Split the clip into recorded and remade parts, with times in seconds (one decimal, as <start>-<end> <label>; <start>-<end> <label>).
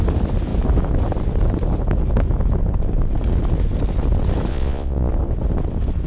0.0-4.5 recorded; 4.5-5.1 remade; 5.1-6.1 recorded